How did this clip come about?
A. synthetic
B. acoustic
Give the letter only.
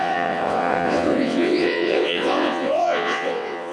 A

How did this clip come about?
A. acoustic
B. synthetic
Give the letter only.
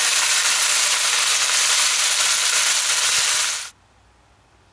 A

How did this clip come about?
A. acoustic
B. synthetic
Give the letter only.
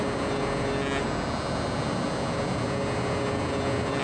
A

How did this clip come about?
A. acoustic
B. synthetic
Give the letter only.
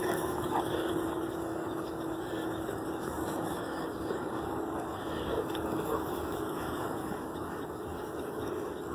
B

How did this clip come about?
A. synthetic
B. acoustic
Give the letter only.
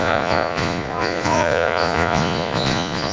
A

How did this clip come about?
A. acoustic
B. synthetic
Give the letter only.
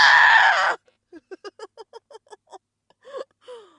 A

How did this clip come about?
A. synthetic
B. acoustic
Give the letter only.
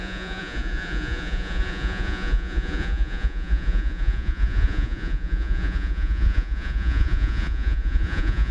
A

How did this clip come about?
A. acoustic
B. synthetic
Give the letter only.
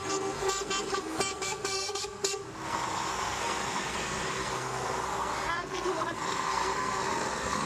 B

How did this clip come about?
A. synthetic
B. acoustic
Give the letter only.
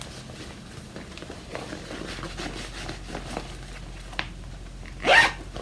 B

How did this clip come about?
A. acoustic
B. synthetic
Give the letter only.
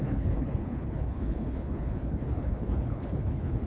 B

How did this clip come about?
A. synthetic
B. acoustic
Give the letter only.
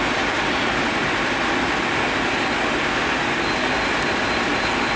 B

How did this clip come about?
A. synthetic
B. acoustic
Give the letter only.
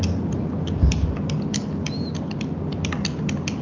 B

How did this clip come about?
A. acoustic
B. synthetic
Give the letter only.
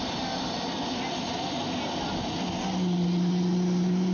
A